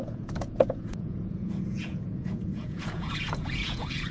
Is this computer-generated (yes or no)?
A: yes